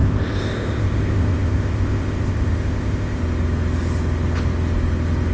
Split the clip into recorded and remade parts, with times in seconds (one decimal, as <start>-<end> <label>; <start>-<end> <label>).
0.0-3.2 remade; 3.2-5.3 recorded